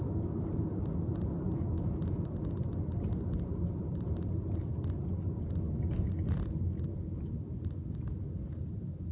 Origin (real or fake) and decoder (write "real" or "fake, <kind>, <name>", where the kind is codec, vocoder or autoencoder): real